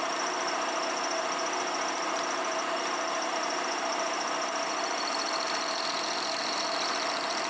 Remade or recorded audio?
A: recorded